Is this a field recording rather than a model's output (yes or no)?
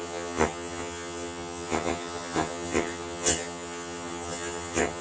no